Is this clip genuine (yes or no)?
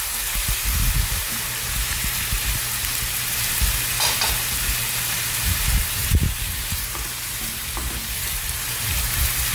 no